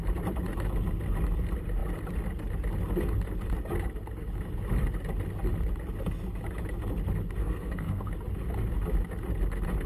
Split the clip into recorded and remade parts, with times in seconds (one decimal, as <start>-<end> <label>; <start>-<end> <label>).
0.0-7.4 recorded; 7.4-8.1 remade; 8.1-9.9 recorded